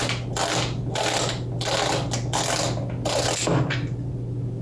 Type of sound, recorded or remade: recorded